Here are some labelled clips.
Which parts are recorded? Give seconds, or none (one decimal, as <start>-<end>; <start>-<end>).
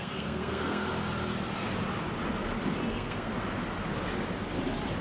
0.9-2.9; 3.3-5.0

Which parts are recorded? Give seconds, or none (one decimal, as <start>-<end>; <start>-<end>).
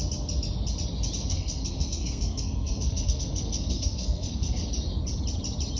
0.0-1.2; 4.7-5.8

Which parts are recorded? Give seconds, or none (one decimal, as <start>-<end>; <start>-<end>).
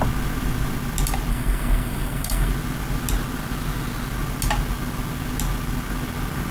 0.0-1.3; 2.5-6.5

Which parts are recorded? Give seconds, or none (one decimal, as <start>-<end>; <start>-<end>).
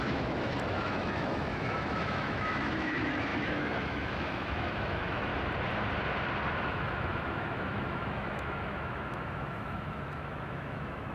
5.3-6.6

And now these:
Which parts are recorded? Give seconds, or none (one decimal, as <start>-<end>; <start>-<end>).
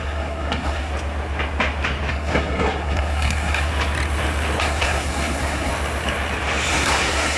0.9-2.1; 3.7-4.6; 5.7-6.7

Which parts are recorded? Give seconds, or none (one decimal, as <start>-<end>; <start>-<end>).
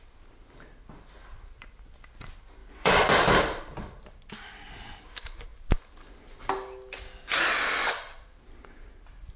0.0-9.4